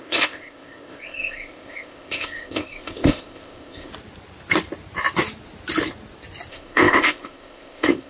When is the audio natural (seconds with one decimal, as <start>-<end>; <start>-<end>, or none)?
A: 3.9-6.5